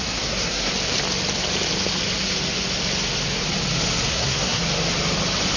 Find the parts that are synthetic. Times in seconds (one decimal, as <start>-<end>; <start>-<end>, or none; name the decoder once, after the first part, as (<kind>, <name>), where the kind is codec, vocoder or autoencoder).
0.0-0.7 (codec, SNAC); 4.1-4.6